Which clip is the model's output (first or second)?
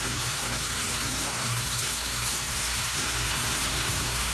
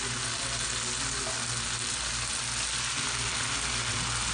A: first